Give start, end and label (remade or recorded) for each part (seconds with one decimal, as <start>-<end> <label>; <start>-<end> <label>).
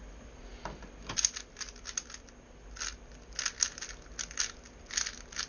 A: 0.0-5.5 recorded